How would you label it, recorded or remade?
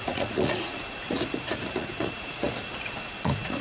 remade